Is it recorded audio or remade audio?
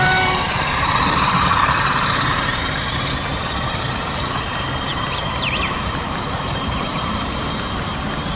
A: remade